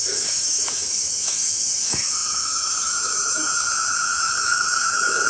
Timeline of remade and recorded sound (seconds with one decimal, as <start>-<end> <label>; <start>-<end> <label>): 0.0-5.3 remade